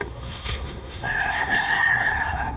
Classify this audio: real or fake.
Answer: fake